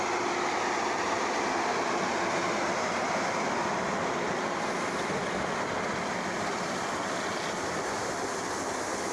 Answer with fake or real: real